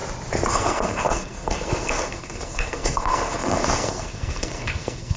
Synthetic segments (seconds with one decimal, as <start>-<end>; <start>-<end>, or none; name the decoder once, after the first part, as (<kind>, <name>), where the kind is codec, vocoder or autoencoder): 0.5-5.2 (codec, SNAC)